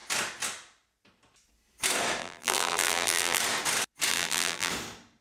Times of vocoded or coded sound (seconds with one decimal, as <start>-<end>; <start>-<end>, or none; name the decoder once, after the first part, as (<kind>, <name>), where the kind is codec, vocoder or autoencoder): 2.2-3.4 (vocoder, BigVGAN v2); 4.1-4.7